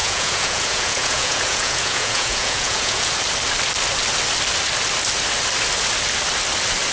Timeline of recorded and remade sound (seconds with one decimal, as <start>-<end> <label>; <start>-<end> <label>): 0.0-3.1 remade; 3.1-6.9 recorded